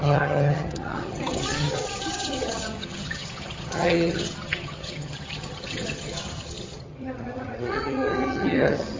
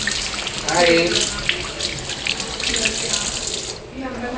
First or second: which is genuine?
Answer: second